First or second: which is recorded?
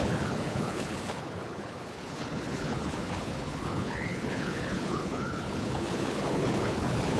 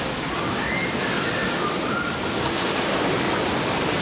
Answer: second